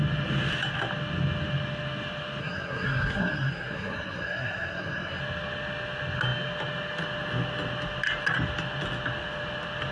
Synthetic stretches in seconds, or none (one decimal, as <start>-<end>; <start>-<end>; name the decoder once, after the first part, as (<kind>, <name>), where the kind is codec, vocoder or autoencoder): 2.4-5.2 (codec, SNAC)